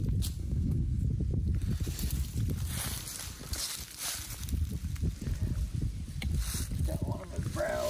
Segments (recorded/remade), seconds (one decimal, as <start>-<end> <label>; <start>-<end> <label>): 0.0-0.4 recorded; 0.4-1.0 remade; 1.0-7.9 recorded